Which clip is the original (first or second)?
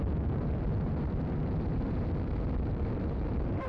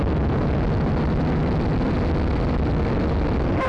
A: second